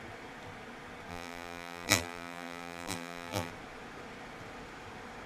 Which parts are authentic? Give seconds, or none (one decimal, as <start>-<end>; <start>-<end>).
0.0-1.1; 3.5-5.3